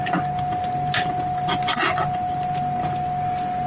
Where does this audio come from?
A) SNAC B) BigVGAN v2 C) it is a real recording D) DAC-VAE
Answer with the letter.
C